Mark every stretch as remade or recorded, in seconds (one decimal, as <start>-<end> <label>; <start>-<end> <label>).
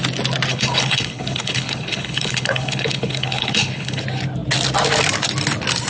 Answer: 0.0-0.5 recorded; 0.5-4.0 remade; 4.0-5.9 recorded